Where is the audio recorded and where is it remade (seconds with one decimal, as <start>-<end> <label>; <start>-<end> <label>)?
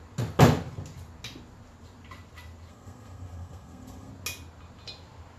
0.0-2.7 recorded; 2.7-4.1 remade; 4.1-5.4 recorded